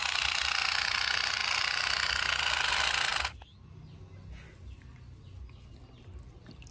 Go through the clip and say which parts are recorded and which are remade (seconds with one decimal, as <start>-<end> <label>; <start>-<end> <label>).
0.0-6.7 recorded